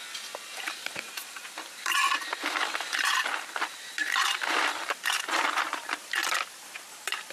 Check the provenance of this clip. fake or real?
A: fake